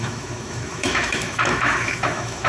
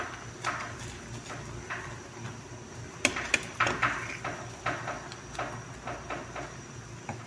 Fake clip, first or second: first